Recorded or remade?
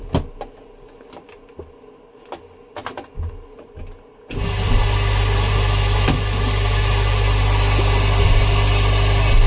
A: recorded